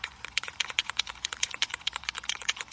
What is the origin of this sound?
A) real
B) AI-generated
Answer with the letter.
B